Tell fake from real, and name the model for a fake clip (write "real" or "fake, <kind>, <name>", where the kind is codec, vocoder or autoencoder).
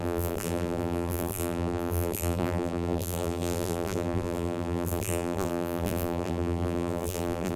fake, vocoder, BigVGAN v2